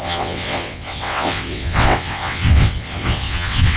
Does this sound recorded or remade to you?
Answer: remade